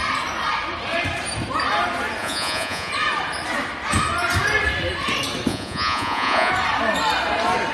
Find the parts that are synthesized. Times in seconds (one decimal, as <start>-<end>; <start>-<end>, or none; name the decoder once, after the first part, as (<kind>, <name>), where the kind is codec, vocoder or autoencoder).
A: 2.2-2.9 (vocoder, Vocos); 5.5-6.5